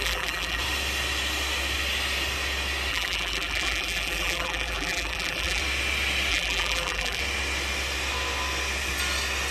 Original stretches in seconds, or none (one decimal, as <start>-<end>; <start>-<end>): 0.6-2.9; 5.6-6.3; 7.2-9.5